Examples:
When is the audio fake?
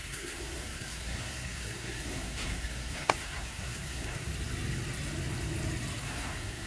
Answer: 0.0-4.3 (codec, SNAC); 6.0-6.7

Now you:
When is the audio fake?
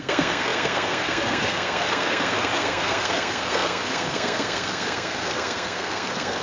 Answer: 0.0-6.4 (codec, SNAC)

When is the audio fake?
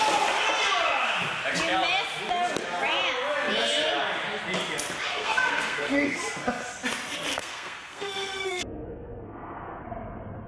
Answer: 5.1-6.2 (codec, SNAC); 7.3-9.8